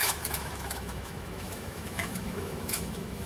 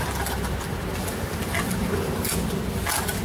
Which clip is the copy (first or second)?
first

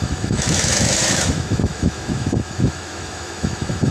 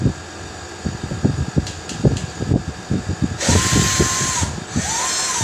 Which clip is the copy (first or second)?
first